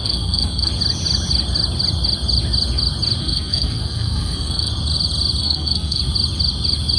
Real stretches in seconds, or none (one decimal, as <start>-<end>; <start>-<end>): 0.7-3.2; 4.7-5.4; 6.0-7.0